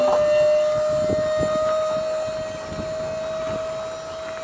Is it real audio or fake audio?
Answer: real